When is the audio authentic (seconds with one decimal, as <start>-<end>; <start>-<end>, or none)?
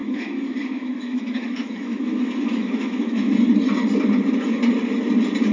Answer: 3.3-5.5